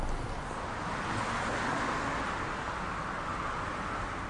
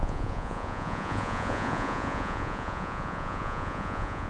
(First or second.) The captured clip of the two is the first